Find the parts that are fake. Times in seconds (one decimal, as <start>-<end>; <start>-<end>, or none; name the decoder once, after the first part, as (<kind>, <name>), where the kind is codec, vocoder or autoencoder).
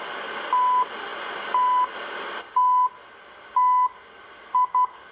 none